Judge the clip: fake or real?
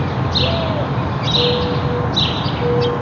real